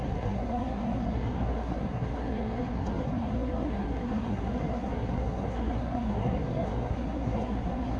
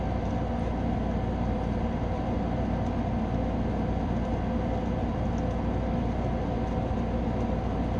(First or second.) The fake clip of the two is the first